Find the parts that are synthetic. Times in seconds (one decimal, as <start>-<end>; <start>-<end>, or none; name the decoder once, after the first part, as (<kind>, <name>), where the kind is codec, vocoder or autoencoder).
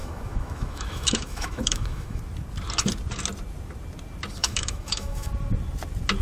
0.0-2.2 (autoencoder, DAC-VAE); 4.4-5.3